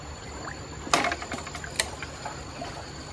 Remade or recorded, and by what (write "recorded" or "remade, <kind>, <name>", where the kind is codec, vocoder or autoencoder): recorded